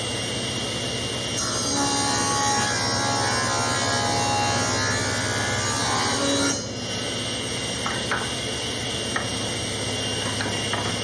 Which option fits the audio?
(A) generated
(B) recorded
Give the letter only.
B